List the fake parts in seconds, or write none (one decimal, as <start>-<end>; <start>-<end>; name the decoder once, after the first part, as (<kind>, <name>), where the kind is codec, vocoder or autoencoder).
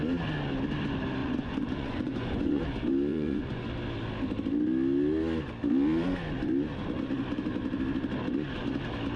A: 1.2-2.6 (vocoder, Vocos); 3.1-3.6